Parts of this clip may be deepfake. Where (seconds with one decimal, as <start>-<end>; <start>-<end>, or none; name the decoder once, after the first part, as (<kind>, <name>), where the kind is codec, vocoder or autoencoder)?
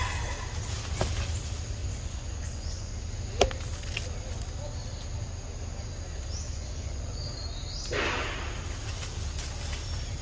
1.8-2.9 (vocoder, Vocos); 6.5-7.2